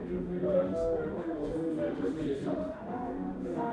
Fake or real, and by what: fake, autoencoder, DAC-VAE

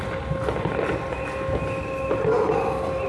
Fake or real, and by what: real